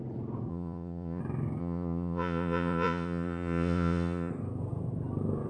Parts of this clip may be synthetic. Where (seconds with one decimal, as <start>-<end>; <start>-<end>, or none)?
0.5-1.2; 1.6-4.3